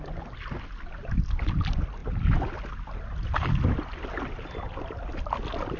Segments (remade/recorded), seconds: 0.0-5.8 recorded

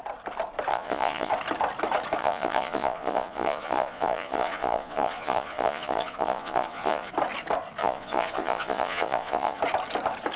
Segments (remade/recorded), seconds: 0.0-0.7 recorded; 0.7-1.3 remade; 1.3-2.2 recorded; 2.2-7.1 remade; 7.1-7.8 recorded; 7.8-9.6 remade; 9.6-10.4 recorded

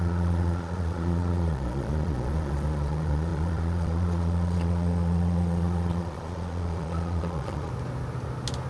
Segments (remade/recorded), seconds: 0.0-7.7 remade; 7.7-8.7 recorded